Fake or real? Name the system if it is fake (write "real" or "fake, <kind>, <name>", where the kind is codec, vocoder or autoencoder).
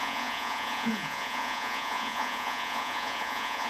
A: fake, vocoder, Vocos